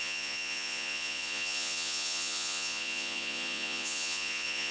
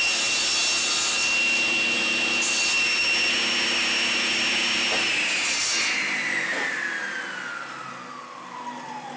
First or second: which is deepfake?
first